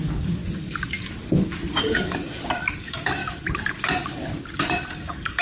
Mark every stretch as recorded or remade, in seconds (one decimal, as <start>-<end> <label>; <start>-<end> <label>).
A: 0.0-0.4 remade; 0.4-1.8 recorded; 1.8-2.2 remade; 2.2-2.8 recorded; 2.8-3.2 remade; 3.2-4.9 recorded; 4.9-5.4 remade